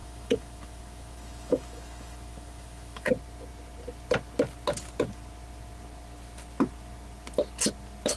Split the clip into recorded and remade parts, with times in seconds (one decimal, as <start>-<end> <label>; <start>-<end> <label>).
0.0-3.1 remade; 3.1-8.2 recorded